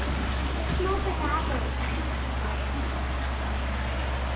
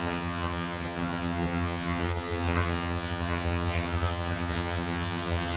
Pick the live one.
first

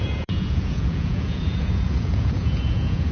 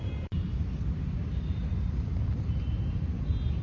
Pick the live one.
second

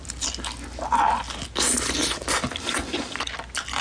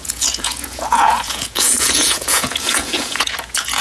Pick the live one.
first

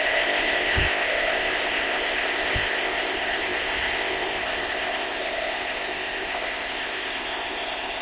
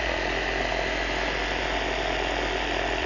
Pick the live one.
second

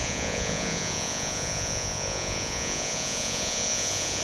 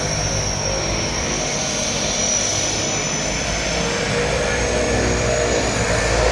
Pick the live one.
second